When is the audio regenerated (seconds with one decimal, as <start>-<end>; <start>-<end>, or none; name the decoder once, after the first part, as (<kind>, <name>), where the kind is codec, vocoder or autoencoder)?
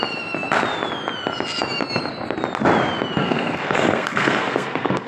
3.2-5.1 (codec, SNAC)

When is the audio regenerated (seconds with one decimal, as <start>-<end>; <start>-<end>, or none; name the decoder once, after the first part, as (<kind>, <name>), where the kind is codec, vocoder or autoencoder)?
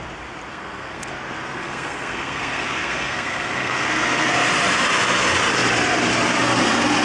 0.5-1.1 (codec, SNAC); 1.6-4.3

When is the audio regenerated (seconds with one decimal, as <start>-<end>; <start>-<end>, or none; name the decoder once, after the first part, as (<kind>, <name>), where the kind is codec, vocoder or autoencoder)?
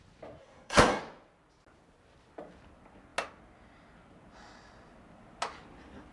0.4-1.0 (codec, SNAC)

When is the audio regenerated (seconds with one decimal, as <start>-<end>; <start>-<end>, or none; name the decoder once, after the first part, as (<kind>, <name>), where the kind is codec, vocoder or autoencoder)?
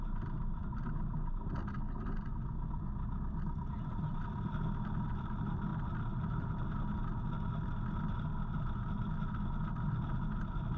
none